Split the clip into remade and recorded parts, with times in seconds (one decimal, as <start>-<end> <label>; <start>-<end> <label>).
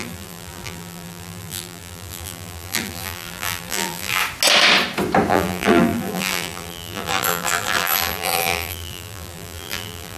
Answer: 0.0-4.2 remade; 4.2-5.3 recorded; 5.3-10.2 remade